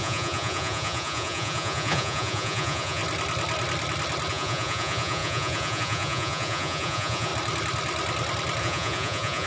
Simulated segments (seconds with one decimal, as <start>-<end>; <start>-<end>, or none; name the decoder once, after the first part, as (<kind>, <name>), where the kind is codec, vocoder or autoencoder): 0.0-3.0 (vocoder, Vocos); 4.3-7.3; 8.6-9.5